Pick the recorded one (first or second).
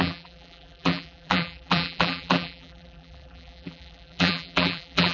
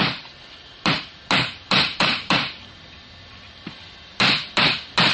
second